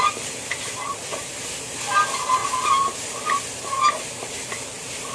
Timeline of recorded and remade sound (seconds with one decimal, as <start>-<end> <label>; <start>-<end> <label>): 0.0-5.1 recorded

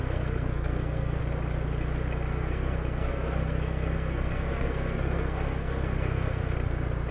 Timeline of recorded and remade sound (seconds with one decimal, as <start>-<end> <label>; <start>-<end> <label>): 0.0-1.2 remade; 1.2-2.3 recorded; 2.3-6.5 remade; 6.5-7.1 recorded

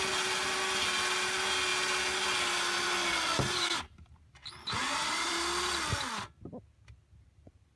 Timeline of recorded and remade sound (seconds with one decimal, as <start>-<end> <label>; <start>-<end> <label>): 0.0-4.4 recorded; 4.4-5.3 remade; 5.3-7.8 recorded

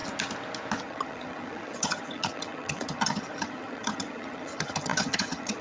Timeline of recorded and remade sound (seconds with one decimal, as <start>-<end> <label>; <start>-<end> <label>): 0.0-0.8 recorded; 0.8-5.6 remade

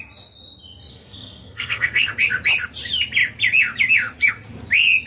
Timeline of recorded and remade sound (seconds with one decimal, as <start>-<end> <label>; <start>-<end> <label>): 0.0-0.9 recorded; 0.9-2.1 remade; 2.1-5.1 recorded

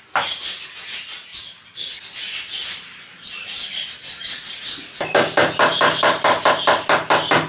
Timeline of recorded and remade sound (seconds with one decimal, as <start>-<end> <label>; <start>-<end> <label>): 0.0-2.6 recorded; 2.6-7.1 remade; 7.1-7.5 recorded

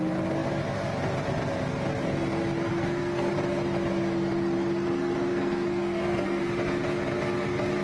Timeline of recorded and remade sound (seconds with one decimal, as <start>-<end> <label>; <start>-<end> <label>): 0.0-2.7 recorded; 2.7-3.3 remade; 3.3-5.3 recorded; 5.3-6.4 remade; 6.4-7.8 recorded

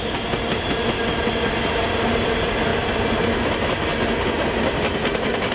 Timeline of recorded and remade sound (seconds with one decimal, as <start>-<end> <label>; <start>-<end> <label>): 0.0-5.5 recorded